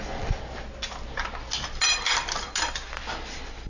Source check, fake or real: real